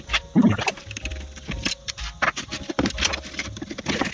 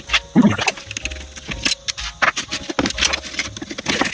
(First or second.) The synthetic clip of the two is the first